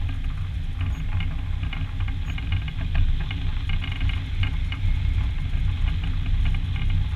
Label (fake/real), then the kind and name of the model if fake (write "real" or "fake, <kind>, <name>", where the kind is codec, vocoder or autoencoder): real